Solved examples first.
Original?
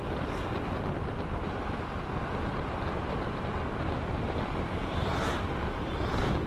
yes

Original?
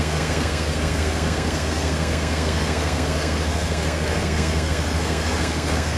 no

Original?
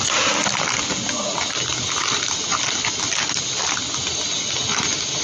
yes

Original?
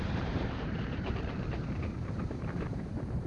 no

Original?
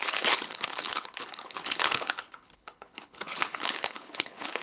no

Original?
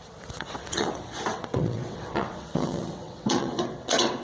no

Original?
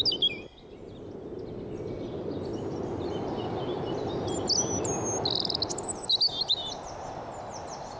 yes